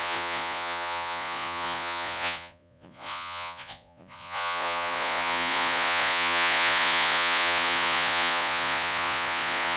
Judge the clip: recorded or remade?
remade